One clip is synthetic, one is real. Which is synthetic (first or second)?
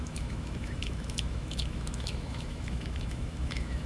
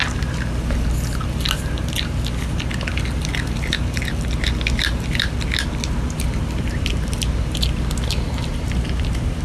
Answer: first